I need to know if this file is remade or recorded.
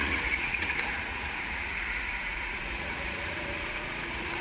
remade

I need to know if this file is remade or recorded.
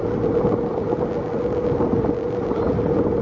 recorded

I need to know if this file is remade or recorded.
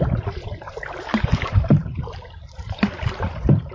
remade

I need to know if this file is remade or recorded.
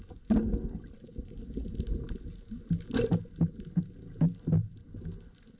recorded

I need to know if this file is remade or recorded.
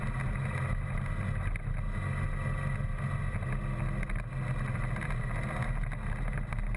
recorded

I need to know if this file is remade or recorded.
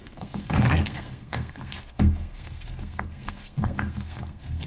remade